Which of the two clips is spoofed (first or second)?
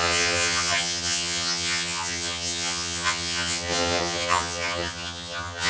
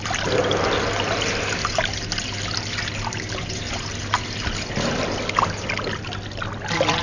first